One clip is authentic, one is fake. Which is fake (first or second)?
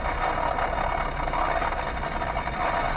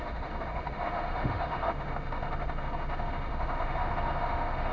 second